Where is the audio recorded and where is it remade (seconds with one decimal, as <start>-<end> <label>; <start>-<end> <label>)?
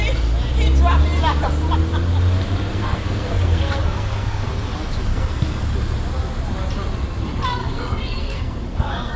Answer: 0.0-2.7 recorded; 2.7-4.5 remade; 4.5-5.1 recorded; 5.1-5.6 remade; 5.6-7.6 recorded; 7.6-9.2 remade